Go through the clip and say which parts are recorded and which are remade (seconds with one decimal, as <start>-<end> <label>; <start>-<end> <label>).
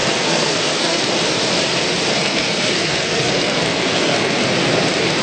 0.0-1.1 remade; 1.1-2.1 recorded; 2.1-4.4 remade; 4.4-5.2 recorded